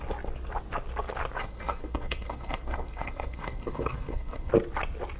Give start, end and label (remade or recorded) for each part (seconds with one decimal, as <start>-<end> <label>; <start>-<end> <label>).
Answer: 0.0-1.4 recorded; 1.4-4.5 remade; 4.5-5.2 recorded